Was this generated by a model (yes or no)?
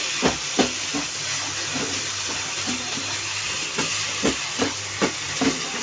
no